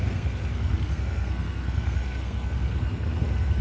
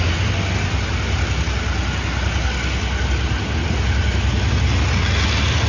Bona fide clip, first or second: second